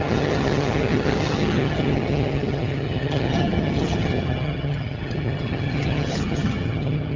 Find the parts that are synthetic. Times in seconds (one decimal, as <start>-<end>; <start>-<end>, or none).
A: 0.0-7.2